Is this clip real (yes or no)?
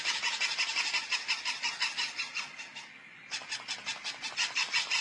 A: yes